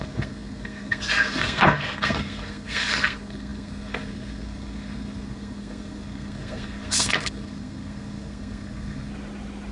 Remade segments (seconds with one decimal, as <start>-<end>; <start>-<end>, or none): 0.0-9.1